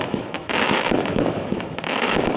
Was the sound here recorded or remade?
remade